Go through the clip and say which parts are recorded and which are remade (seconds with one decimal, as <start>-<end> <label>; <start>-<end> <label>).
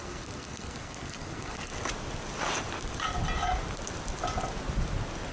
0.0-1.7 remade; 1.7-5.3 recorded